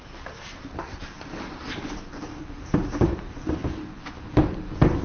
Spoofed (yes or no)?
yes